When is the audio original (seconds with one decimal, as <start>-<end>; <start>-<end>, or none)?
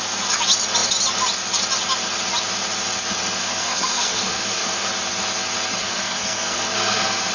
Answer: 0.0-3.4; 4.9-5.8